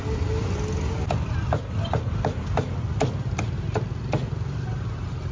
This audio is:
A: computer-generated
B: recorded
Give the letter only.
B